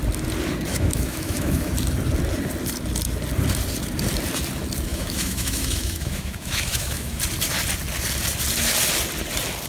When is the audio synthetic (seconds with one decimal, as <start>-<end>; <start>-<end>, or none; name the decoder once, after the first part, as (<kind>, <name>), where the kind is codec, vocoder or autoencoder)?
0.7-1.7 (autoencoder, DAC-VAE); 4.9-7.2